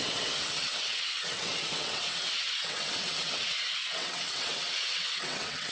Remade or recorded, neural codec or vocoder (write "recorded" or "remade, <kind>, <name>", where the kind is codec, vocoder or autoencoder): remade, vocoder, WaveNeXt